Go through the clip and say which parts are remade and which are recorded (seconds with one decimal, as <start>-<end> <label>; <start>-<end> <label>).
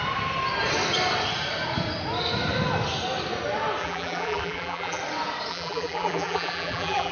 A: 0.0-3.8 recorded; 3.8-5.0 remade; 5.0-5.5 recorded; 5.5-7.1 remade